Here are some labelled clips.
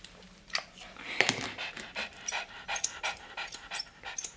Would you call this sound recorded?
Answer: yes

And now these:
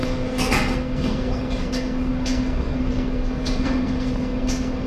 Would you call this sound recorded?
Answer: no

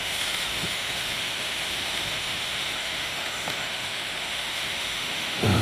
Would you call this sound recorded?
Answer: no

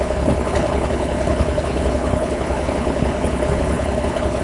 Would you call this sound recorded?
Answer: no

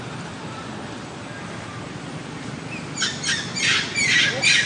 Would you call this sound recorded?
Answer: yes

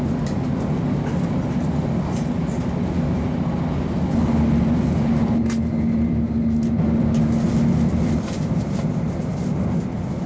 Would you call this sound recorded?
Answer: yes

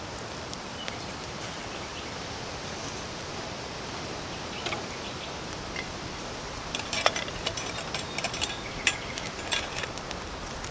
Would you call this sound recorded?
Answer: no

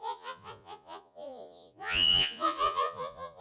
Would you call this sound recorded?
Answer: no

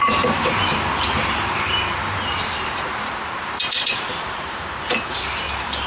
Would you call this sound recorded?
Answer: no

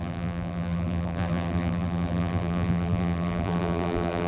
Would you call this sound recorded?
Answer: no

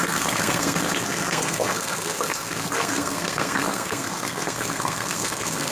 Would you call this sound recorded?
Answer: no